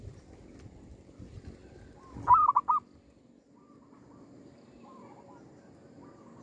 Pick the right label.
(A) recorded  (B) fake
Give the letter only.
A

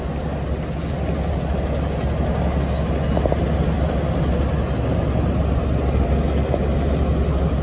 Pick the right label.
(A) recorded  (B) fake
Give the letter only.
A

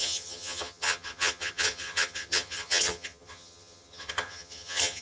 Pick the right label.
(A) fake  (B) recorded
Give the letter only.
A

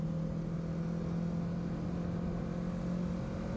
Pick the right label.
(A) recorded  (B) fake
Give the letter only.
A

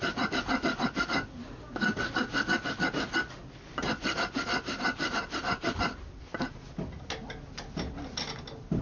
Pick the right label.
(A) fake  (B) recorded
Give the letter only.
B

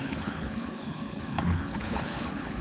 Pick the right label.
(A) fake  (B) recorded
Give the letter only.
A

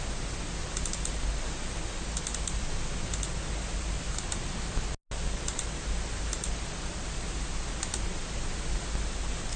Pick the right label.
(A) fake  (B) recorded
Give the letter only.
B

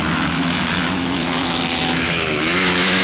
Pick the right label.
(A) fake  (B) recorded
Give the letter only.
A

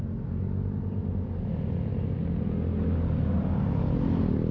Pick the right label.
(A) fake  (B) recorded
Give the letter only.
B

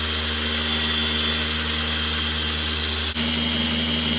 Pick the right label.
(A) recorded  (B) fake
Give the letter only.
A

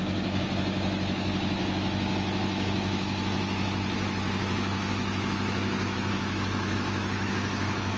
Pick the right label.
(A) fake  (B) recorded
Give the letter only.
A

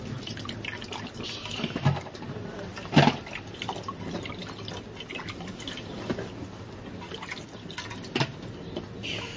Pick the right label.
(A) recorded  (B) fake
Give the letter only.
A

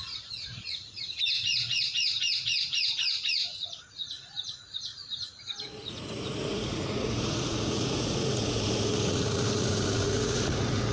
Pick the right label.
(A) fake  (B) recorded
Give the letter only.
A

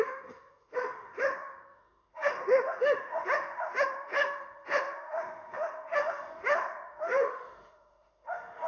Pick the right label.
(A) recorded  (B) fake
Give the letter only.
B